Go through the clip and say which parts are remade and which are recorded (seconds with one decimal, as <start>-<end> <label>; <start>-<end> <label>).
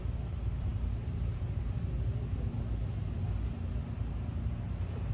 0.0-5.1 recorded